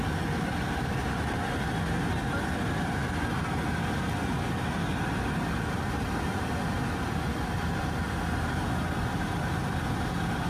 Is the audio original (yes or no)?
yes